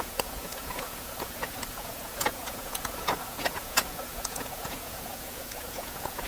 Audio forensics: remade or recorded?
remade